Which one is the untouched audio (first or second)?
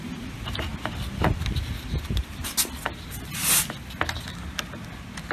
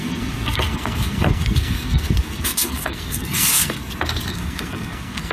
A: first